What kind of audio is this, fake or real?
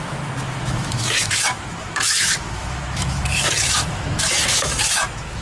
fake